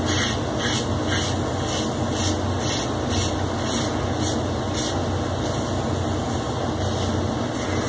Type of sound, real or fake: real